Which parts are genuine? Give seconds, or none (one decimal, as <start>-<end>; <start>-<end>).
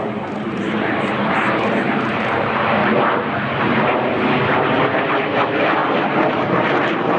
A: 2.8-5.0; 5.8-6.3